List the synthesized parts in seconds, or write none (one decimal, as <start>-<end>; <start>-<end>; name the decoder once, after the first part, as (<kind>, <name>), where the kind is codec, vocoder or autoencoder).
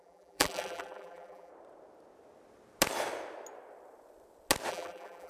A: 0.0-1.5 (vocoder, BigVGAN v2); 4.7-5.3